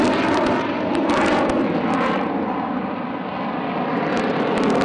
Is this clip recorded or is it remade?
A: recorded